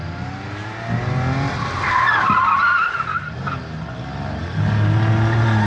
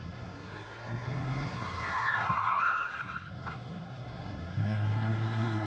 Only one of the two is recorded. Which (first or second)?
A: first